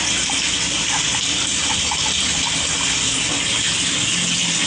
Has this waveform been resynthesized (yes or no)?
no